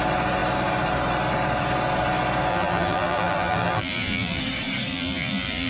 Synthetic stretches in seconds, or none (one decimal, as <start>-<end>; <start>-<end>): 2.5-4.4; 4.9-5.7